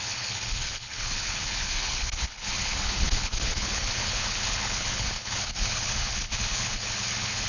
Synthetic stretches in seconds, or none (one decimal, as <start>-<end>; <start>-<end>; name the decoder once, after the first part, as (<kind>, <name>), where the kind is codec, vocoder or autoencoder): 0.0-7.5 (codec, HILCodec)